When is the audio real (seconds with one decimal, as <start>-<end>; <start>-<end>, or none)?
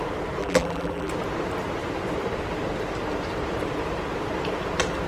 0.0-0.4; 1.1-5.1